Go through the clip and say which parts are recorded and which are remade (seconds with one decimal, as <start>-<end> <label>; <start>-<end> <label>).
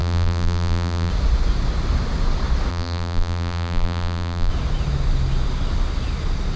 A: 0.0-1.1 remade; 1.1-2.7 recorded; 2.7-4.5 remade; 4.5-6.6 recorded